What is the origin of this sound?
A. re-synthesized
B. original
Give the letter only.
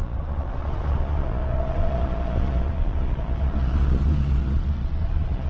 A